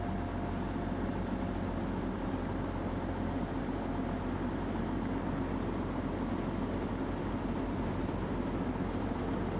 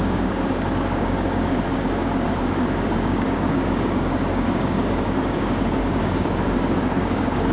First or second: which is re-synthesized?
second